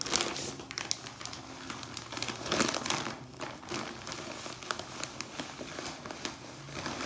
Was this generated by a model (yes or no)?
no